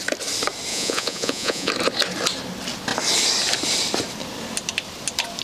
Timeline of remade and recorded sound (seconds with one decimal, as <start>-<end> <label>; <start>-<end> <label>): 0.0-0.7 recorded; 0.7-1.7 remade; 1.7-5.4 recorded